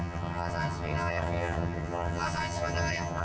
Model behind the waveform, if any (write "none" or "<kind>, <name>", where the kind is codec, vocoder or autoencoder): vocoder, HiFi-GAN